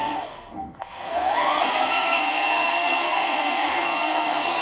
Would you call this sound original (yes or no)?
no